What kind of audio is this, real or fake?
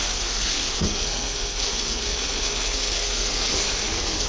fake